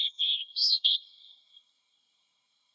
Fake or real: fake